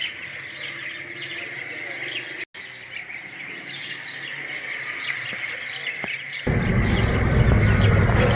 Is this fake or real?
real